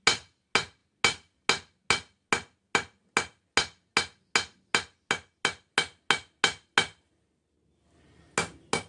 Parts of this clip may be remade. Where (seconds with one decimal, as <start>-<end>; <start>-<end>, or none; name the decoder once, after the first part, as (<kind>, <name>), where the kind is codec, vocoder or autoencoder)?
none